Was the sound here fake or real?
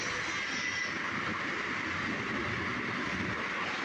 real